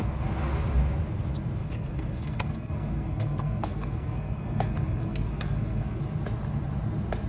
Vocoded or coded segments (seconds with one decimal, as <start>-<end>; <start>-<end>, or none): 1.6-6.0